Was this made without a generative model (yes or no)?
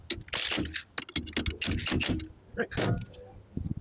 yes